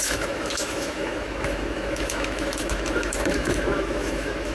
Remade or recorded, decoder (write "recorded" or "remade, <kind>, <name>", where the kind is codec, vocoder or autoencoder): remade, autoencoder, DAC-VAE